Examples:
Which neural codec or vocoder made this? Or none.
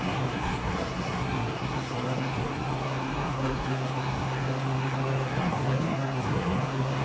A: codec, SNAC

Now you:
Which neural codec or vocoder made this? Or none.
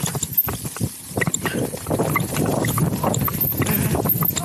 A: none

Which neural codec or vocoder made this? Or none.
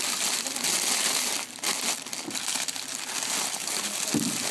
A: none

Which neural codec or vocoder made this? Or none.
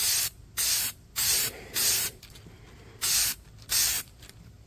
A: vocoder, BigVGAN v2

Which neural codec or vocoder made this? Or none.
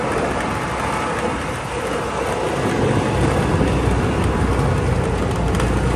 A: none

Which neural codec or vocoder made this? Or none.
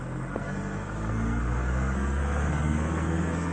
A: codec, SNAC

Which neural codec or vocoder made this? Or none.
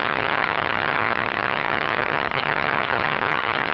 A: vocoder, HiFi-GAN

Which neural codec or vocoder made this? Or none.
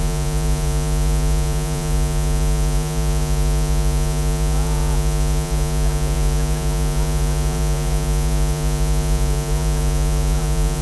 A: vocoder, Vocos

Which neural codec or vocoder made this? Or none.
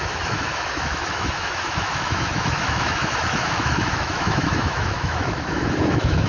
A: autoencoder, DAC-VAE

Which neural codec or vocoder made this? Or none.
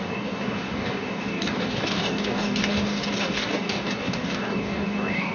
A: codec, DAC